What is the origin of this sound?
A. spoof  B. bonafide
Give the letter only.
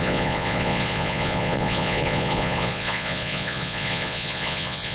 A